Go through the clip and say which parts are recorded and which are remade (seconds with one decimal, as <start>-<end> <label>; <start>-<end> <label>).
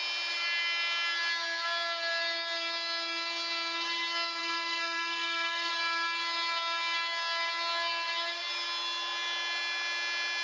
0.0-4.4 recorded; 4.4-5.7 remade; 5.7-10.4 recorded